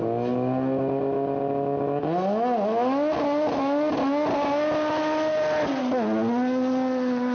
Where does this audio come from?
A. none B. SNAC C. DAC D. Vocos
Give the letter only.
A